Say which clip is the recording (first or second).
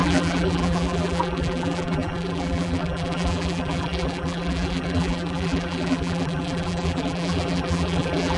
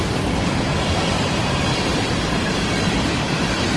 second